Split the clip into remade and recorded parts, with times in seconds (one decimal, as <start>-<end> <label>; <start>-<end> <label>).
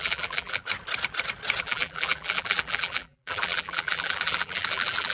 0.0-0.6 remade; 0.6-1.6 recorded; 1.6-5.1 remade